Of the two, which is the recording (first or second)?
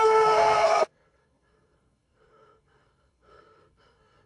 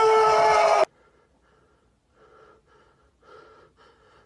second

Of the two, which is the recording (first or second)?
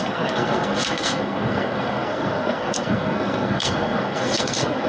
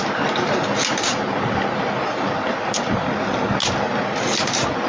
second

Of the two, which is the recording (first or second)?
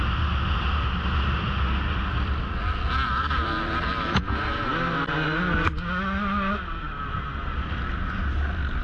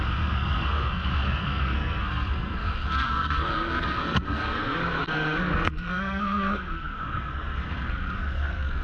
first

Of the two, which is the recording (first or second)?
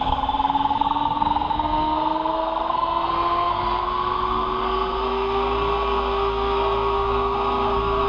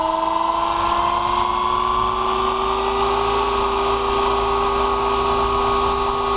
second